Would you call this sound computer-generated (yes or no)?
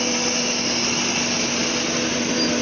no